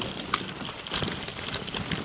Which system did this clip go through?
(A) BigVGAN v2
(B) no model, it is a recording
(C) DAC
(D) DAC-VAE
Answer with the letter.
B